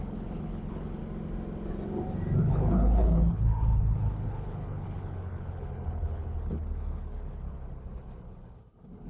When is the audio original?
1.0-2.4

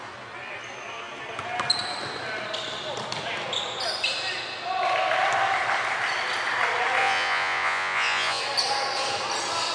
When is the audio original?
0.0-7.0; 8.4-9.7

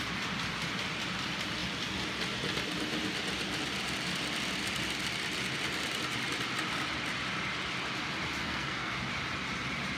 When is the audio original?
0.0-8.4; 9.1-10.0

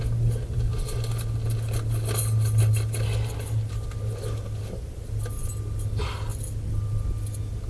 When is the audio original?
0.7-2.6; 6.3-7.7

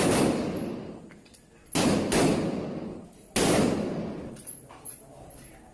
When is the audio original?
0.0-5.7

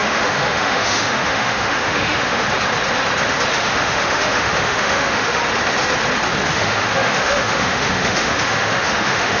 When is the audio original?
2.4-3.5; 5.4-6.5

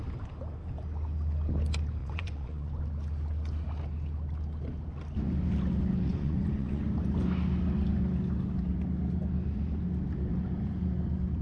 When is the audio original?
0.0-2.0; 2.7-6.1; 6.8-11.4